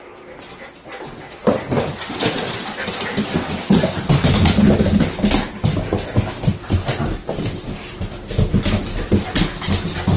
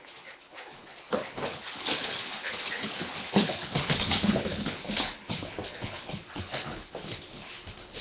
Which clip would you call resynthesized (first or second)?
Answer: second